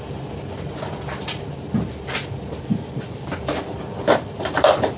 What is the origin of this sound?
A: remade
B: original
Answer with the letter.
A